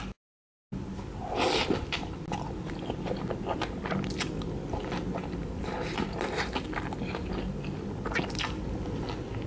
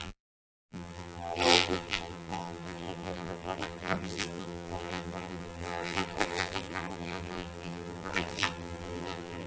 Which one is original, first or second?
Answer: first